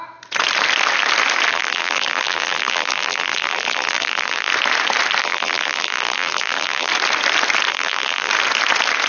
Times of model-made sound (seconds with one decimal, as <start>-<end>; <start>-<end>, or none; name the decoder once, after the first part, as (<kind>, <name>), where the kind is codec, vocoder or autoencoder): 1.5-4.5 (vocoder, BigVGAN v2); 5.2-6.9; 7.7-8.3